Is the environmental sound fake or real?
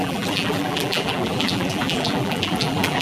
fake